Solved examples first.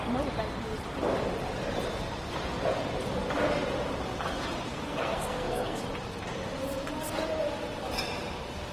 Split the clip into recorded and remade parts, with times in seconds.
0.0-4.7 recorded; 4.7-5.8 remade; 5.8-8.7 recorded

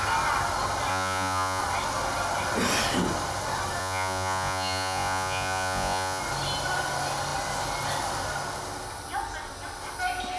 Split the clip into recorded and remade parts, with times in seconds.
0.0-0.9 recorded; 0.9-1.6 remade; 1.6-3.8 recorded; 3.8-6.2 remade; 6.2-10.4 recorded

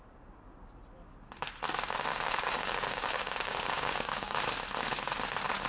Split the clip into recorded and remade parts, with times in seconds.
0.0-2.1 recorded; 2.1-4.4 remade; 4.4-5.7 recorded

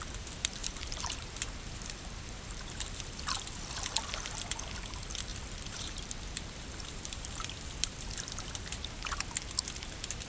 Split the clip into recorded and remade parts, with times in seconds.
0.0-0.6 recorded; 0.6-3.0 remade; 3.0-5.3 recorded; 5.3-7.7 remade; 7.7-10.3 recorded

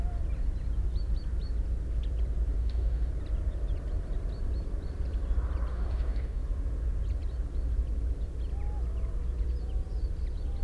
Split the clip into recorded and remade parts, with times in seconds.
0.0-2.6 recorded; 2.6-3.1 remade; 3.1-5.7 recorded; 5.7-6.4 remade; 6.4-10.6 recorded

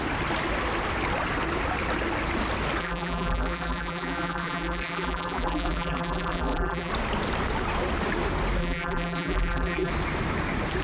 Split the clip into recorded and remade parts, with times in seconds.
0.0-2.8 recorded; 2.8-6.9 remade; 6.9-8.6 recorded; 8.6-9.9 remade; 9.9-10.8 recorded